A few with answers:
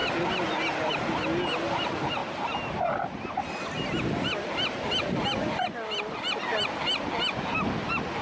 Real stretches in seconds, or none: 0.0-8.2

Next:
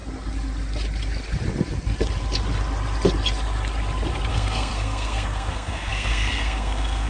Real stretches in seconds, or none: 0.0-4.3

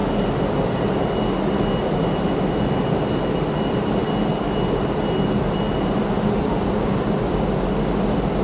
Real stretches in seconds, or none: 0.0-8.4

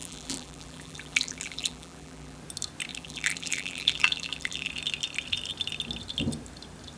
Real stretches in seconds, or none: 2.4-2.9; 4.7-7.0

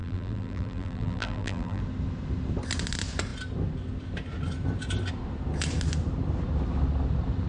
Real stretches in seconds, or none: 1.8-7.5